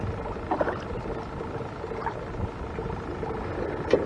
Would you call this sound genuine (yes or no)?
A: yes